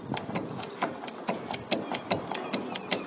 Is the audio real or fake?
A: real